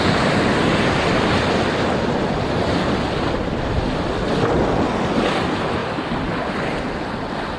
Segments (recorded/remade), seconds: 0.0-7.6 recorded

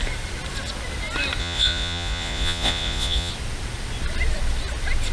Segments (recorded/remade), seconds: 0.0-1.4 recorded; 1.4-3.3 remade; 3.3-5.1 recorded